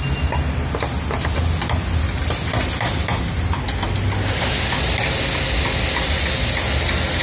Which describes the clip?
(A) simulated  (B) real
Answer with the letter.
B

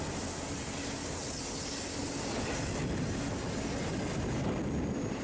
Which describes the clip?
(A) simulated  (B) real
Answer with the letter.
B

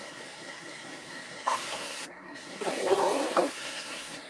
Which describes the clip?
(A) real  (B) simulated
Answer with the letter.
B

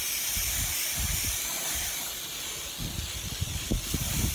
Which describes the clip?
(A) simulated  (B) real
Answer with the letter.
B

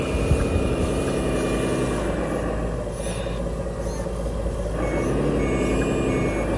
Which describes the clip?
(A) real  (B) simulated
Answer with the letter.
A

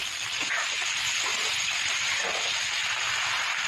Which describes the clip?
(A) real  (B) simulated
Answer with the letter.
A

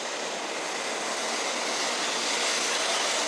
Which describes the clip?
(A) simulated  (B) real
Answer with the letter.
B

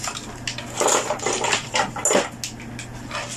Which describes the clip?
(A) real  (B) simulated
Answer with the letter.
A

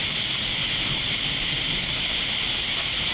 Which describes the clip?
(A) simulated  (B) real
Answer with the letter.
B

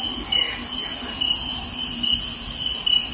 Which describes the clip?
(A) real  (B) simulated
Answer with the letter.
A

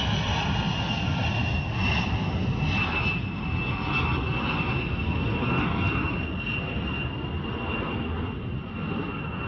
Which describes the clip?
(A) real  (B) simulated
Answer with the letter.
A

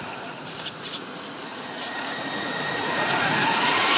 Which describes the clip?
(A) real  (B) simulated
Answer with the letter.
B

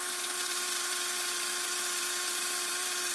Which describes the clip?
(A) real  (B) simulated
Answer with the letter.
A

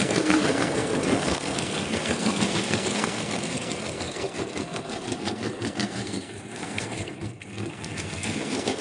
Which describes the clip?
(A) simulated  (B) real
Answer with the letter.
A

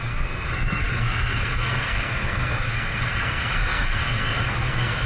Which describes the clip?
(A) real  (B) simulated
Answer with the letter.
B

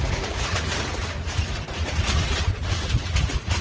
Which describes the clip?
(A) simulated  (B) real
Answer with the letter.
A